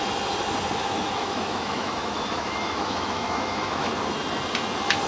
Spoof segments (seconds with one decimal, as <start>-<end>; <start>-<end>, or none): 0.8-3.9